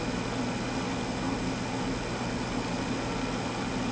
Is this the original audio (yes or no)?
yes